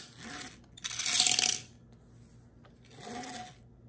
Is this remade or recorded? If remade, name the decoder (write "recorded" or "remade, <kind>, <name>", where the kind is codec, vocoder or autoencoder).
recorded